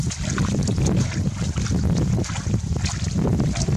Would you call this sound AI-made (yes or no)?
no